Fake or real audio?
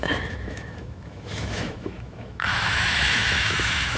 fake